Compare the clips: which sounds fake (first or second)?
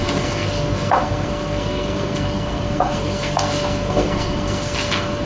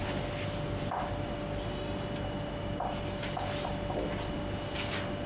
first